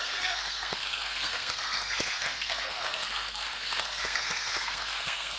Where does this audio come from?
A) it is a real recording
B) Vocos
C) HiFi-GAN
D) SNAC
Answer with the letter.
D